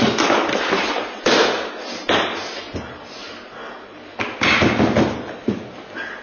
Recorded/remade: recorded